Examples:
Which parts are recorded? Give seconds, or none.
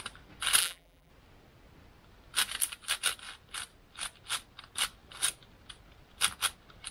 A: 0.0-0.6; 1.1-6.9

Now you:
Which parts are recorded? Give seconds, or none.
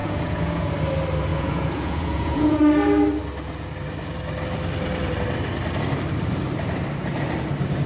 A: 0.7-1.3; 2.6-7.9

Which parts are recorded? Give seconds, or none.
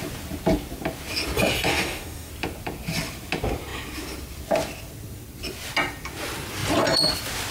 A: 0.0-1.7; 2.3-7.5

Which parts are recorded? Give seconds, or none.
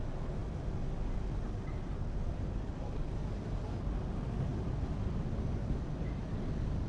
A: 0.0-6.9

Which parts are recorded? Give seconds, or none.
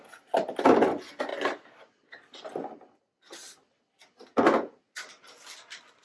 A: 0.0-6.0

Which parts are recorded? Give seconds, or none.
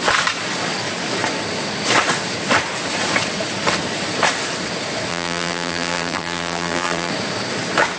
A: 0.0-5.1; 7.1-8.0